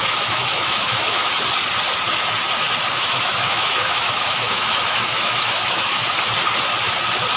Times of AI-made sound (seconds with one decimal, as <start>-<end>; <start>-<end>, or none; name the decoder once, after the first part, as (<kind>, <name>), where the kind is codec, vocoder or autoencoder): 0.0-1.2 (autoencoder, DAC-VAE); 3.0-6.0